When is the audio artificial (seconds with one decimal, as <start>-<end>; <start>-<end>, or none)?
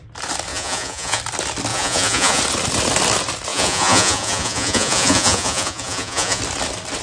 0.5-1.2; 1.7-2.4; 3.5-6.4